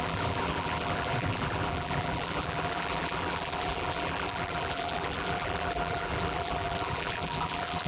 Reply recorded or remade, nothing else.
remade